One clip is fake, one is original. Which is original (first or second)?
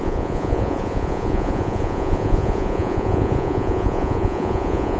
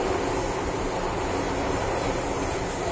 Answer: second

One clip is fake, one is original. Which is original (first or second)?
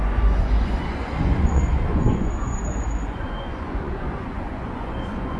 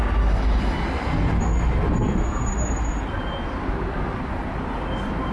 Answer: second